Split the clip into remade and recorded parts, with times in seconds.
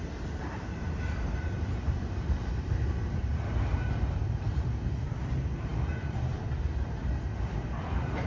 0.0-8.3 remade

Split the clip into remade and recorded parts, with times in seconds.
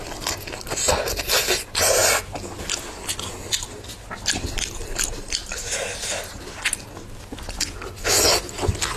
0.0-9.0 recorded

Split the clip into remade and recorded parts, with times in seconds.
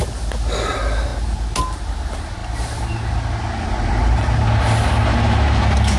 0.0-6.0 recorded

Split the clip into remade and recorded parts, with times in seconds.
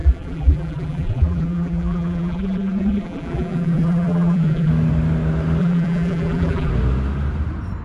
0.0-4.7 remade; 4.7-5.6 recorded; 5.6-6.7 remade; 6.7-7.8 recorded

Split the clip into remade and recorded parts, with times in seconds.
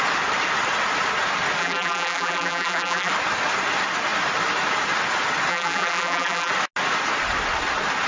0.0-1.6 recorded; 1.6-3.1 remade; 3.1-5.5 recorded; 5.5-6.5 remade; 6.5-8.1 recorded